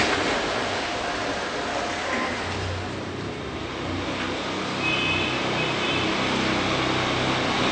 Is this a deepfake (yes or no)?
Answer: no